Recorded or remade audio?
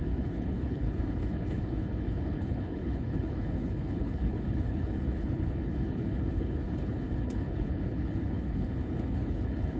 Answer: remade